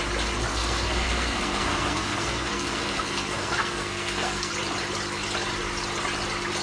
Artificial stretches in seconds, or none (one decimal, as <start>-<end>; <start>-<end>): 0.5-4.5